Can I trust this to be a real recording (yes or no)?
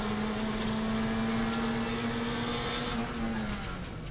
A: yes